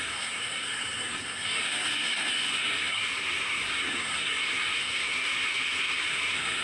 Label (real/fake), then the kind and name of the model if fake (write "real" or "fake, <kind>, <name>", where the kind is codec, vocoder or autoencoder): fake, codec, SNAC